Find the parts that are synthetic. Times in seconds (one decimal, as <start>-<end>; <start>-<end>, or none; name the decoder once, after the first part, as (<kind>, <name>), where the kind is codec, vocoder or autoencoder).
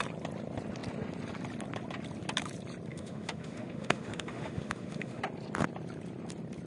2.9-5.2 (autoencoder, DAC-VAE)